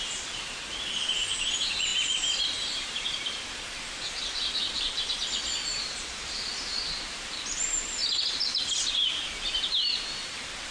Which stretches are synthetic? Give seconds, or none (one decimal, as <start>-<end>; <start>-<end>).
0.0-1.9; 2.4-5.2; 5.7-6.5; 7.0-8.0; 8.8-10.7